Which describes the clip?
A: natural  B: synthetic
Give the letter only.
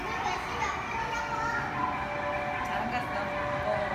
A